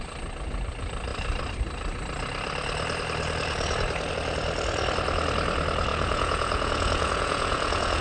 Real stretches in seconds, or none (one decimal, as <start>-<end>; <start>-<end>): 0.0-5.9